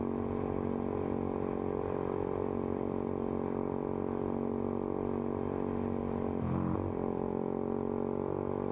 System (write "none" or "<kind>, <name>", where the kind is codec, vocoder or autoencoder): none